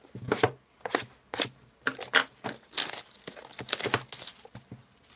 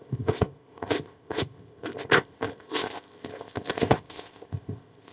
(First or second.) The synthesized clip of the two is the second